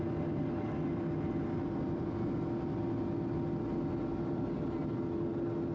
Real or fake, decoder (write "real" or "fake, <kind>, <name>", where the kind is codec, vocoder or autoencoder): real